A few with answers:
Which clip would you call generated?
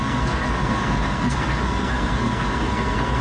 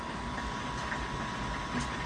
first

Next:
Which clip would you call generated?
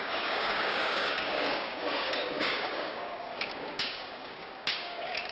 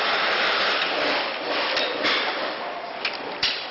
first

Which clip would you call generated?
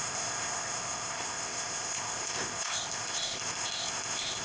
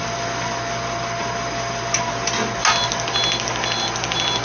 first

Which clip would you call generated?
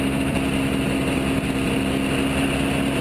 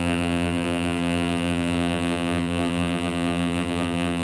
second